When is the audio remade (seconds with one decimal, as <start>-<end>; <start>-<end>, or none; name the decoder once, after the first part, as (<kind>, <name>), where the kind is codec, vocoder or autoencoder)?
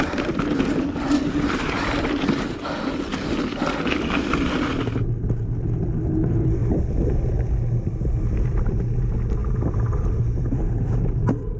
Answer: 6.6-8.8 (vocoder, BigVGAN v2); 9.4-10.0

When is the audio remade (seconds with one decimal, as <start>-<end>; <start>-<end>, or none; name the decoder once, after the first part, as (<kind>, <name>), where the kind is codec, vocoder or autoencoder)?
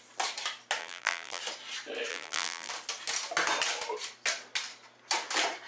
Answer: 0.8-1.4 (vocoder, BigVGAN v2); 2.1-2.7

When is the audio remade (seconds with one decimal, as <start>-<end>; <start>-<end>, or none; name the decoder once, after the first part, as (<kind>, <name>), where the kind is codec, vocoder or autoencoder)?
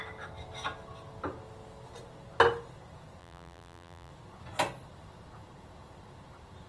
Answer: 3.2-4.1 (vocoder, BigVGAN v2)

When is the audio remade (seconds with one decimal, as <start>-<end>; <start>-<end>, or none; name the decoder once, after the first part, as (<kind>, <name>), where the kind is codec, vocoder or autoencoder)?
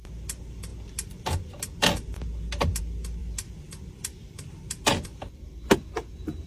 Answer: 3.2-5.9 (vocoder, BigVGAN v2)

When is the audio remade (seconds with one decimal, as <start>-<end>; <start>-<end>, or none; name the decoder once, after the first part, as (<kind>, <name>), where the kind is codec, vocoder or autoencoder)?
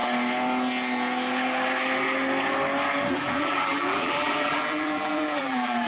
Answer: 3.1-5.9 (vocoder, BigVGAN v2)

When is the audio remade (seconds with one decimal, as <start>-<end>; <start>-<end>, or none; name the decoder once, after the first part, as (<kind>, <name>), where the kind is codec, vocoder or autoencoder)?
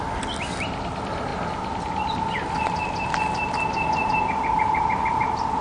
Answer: none